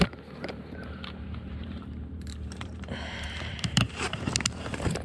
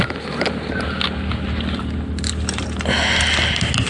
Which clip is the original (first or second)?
second